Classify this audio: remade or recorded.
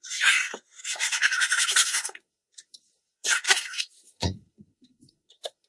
remade